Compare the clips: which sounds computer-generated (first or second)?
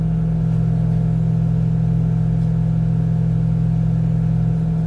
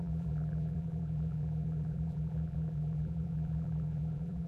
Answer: second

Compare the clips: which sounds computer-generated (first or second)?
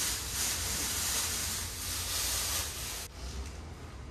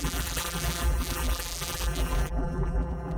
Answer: second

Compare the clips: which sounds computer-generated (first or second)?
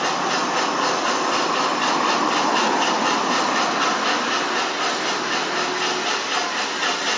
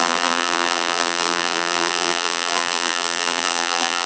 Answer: second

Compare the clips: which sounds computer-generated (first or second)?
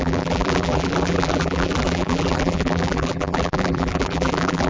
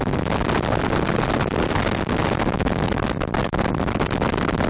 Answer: first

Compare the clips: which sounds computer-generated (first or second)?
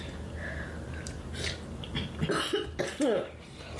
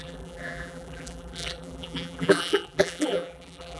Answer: second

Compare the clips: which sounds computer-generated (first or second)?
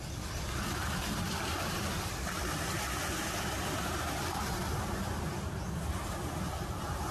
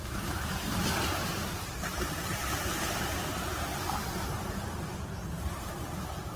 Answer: second